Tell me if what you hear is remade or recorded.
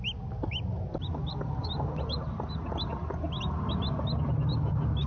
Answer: recorded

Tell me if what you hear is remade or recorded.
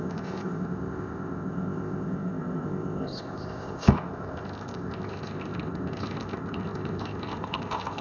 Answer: remade